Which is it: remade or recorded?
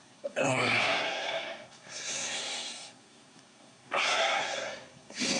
remade